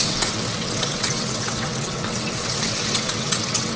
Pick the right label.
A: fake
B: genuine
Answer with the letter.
A